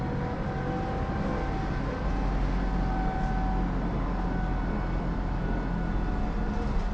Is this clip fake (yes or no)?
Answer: no